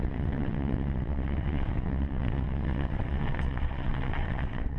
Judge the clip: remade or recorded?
remade